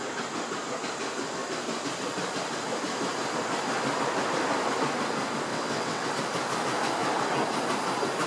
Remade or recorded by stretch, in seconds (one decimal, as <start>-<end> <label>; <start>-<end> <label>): 0.0-5.5 recorded; 5.5-6.1 remade; 6.1-8.3 recorded